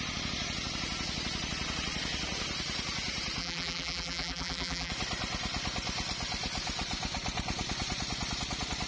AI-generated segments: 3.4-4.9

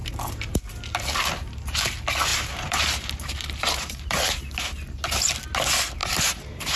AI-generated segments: 0.0-0.6; 2.3-4.5; 6.0-6.8

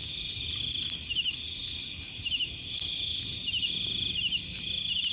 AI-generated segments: none

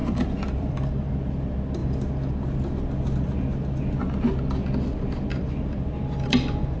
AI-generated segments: 0.0-1.1; 5.3-6.8